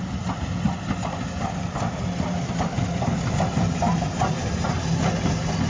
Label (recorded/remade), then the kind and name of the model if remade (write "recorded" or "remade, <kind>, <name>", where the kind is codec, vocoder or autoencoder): recorded